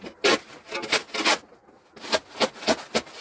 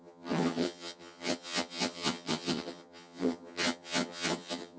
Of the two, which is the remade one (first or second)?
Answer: second